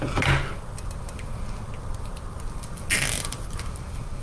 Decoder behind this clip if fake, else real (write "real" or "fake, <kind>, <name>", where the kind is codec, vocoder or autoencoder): real